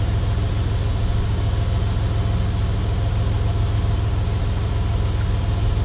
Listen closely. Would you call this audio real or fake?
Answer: real